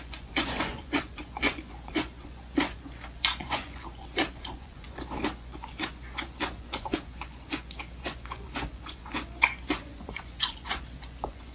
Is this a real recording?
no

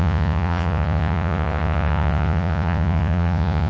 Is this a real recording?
no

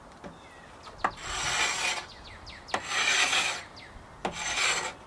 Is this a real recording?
yes